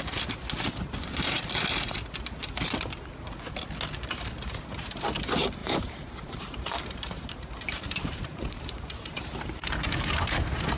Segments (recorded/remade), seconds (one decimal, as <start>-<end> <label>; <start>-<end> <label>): 0.0-5.6 recorded; 5.6-10.8 remade